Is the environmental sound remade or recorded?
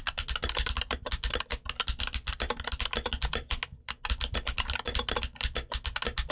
recorded